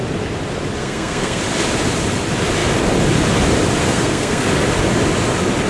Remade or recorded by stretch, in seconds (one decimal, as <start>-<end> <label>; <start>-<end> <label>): 0.0-0.8 recorded; 0.8-1.4 remade; 1.4-3.8 recorded; 3.8-4.5 remade; 4.5-5.7 recorded